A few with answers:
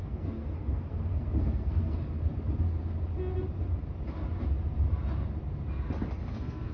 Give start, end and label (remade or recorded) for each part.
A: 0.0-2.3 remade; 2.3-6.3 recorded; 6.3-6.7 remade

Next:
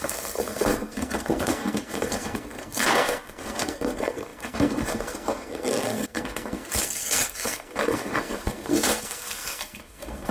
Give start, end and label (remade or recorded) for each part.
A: 0.0-10.3 remade

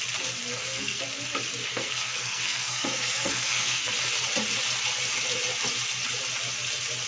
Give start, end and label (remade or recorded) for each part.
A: 0.0-0.5 recorded; 0.5-1.0 remade; 1.0-1.7 recorded; 1.7-3.9 remade; 3.9-7.1 recorded